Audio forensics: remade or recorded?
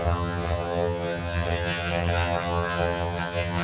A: remade